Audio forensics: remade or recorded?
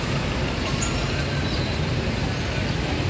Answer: recorded